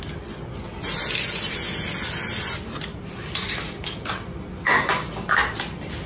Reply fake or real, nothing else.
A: real